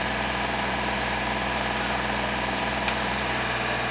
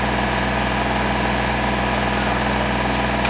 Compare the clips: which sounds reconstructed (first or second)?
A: first